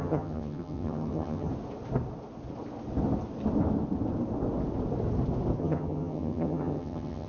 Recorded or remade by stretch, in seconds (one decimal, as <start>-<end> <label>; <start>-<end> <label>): 0.0-1.5 remade; 1.5-5.6 recorded; 5.6-7.3 remade